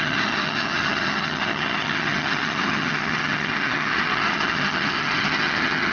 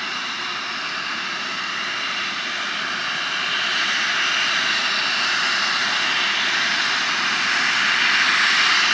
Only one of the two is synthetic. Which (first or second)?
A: first